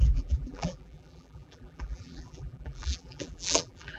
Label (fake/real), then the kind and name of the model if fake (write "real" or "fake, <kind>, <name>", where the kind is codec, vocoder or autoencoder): fake, vocoder, BigVGAN v2